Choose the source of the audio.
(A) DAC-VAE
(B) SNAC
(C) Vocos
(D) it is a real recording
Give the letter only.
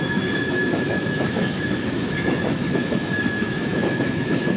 A